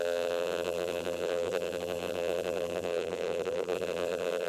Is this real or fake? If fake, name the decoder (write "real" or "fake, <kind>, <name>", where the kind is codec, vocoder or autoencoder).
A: fake, vocoder, BigVGAN v2